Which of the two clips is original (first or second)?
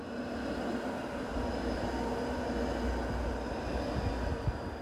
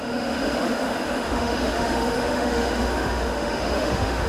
first